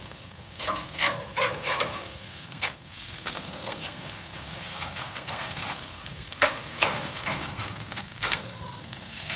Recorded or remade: remade